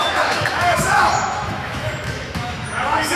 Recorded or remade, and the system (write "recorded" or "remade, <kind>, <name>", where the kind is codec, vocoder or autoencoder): remade, autoencoder, DAC-VAE